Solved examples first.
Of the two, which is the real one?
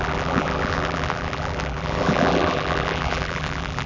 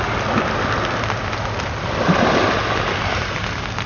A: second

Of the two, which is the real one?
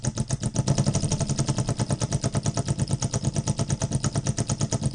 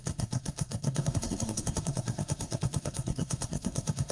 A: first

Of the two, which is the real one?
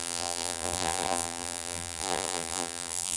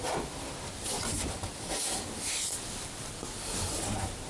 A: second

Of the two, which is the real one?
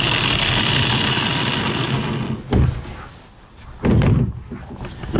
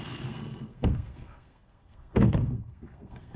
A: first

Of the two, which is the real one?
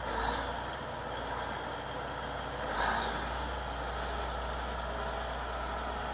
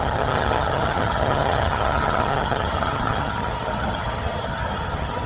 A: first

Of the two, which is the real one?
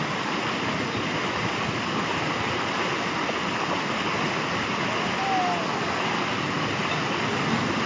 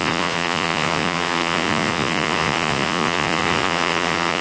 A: first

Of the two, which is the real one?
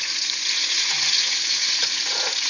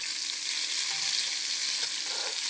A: second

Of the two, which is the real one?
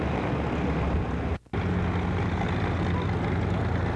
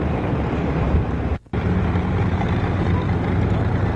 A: first